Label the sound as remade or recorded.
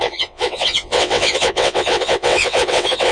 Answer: remade